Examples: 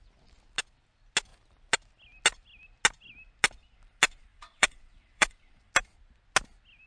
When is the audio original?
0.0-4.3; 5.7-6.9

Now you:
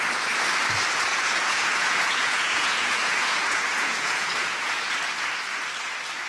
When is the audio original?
0.0-1.1; 4.9-6.3

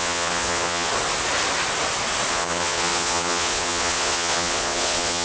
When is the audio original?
0.9-2.3

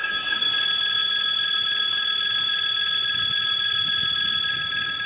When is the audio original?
0.5-5.1

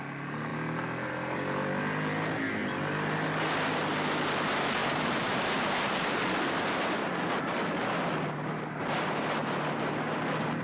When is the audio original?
0.0-4.8; 6.2-10.6